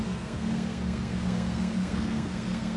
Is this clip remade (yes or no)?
yes